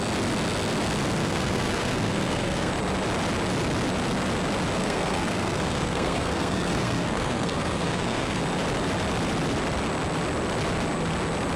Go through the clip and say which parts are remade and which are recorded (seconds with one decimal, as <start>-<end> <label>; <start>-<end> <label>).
0.0-1.2 recorded; 1.2-2.7 remade; 2.7-4.8 recorded; 4.8-8.4 remade; 8.4-11.6 recorded